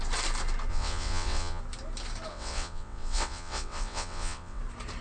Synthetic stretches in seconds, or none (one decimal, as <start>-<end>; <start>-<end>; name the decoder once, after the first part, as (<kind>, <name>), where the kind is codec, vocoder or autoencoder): 0.7-1.6 (vocoder, WaveNeXt); 2.3-4.6